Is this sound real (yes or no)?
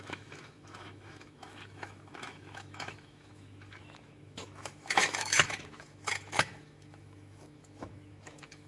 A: no